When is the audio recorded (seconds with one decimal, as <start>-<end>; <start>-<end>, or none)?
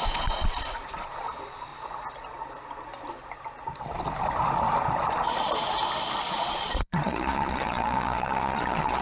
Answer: 1.7-6.1